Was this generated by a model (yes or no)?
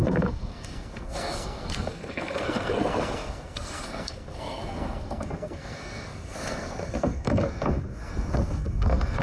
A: yes